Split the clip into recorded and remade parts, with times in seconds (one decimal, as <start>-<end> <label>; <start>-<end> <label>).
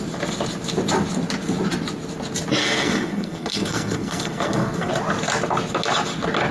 0.0-2.6 recorded; 2.6-4.9 remade; 4.9-6.5 recorded